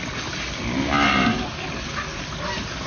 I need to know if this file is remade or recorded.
recorded